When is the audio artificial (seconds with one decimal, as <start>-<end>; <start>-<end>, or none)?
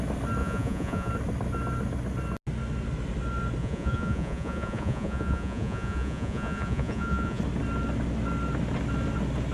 0.4-1.1; 3.6-7.4